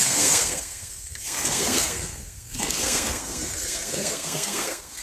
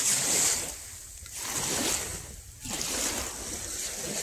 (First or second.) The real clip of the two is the second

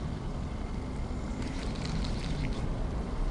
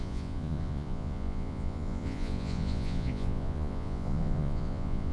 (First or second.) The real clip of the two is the first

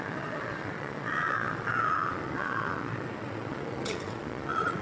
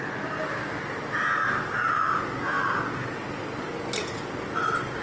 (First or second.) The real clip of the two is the second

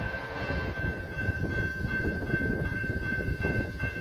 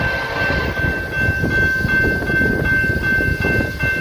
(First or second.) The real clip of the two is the second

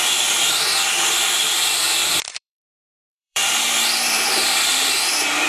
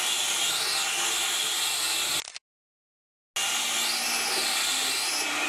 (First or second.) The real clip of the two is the second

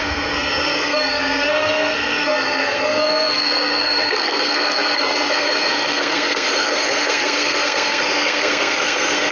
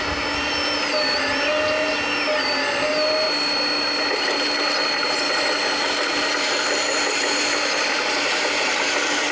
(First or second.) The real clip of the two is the second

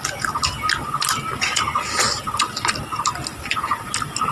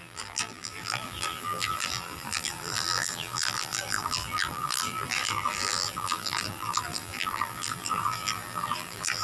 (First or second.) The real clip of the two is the first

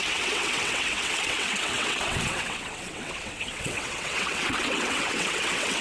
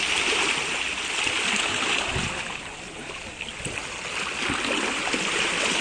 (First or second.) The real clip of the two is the second